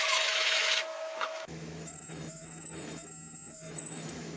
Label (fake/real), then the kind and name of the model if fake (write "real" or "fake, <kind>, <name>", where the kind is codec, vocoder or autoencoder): fake, autoencoder, DAC-VAE